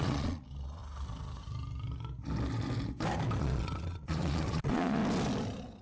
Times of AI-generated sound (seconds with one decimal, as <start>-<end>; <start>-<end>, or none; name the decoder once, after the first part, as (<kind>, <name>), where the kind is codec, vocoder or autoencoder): 0.0-0.8 (vocoder, Vocos); 3.4-5.0